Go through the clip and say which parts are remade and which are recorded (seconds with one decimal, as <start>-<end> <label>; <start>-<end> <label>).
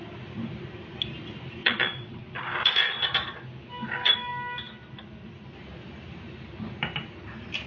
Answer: 0.0-1.6 recorded; 1.6-2.2 remade; 2.2-7.7 recorded